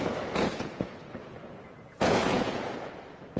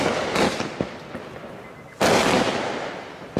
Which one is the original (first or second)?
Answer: second